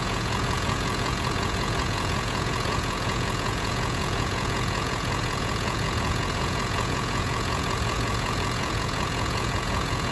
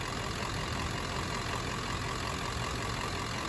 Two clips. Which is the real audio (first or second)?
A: second